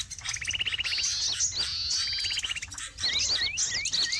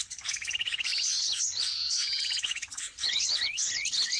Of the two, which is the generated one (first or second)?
second